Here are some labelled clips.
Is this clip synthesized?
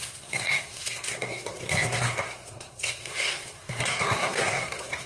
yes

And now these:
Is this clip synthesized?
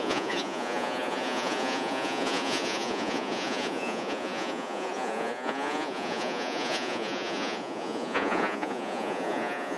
yes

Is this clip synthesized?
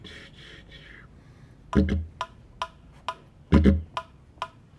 no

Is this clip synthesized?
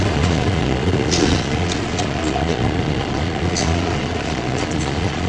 yes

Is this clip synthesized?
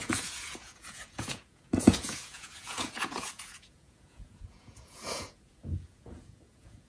yes